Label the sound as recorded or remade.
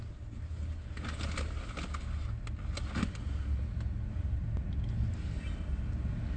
recorded